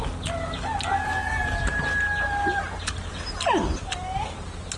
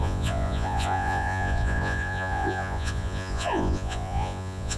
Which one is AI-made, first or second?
second